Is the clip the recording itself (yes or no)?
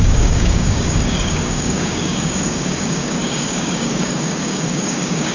no